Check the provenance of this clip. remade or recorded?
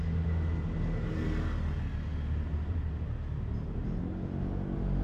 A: recorded